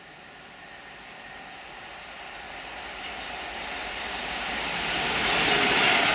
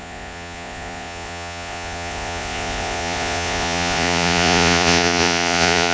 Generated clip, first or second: second